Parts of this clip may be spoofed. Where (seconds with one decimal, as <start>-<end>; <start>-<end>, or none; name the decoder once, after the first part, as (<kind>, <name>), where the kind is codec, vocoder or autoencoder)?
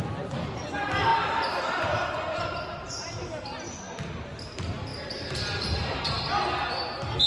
1.1-3.0 (vocoder, BigVGAN v2); 4.9-6.3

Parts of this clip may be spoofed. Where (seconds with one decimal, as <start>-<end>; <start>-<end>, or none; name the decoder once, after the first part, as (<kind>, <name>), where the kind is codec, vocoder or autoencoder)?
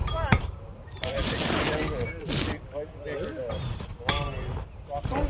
0.0-1.2 (vocoder, BigVGAN v2); 4.1-5.3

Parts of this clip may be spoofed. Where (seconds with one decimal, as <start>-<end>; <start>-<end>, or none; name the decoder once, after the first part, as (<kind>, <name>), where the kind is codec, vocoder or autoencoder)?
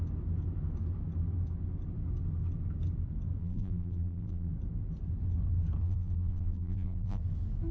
3.4-4.5 (vocoder, BigVGAN v2); 5.8-7.2